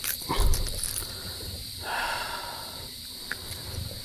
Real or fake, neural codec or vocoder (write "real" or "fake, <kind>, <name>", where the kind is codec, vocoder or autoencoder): fake, vocoder, BigVGAN v2